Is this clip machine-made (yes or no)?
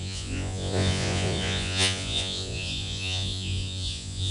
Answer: yes